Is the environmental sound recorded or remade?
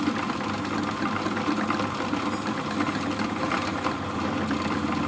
recorded